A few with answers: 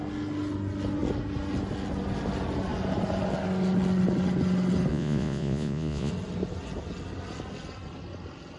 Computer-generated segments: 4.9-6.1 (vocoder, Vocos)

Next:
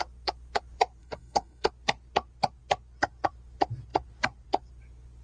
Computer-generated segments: 1.0-1.7 (codec, SNAC)

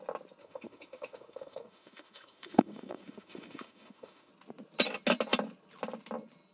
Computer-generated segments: 0.4-4.3 (autoencoder, DAC-VAE)

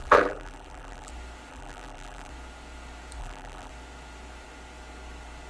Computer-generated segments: 0.0-1.1 (vocoder, BigVGAN v2); 1.5-2.3; 3.2-3.7

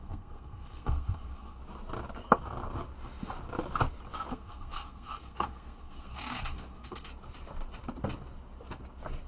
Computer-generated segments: 0.0-1.6 (codec, SNAC); 4.3-7.1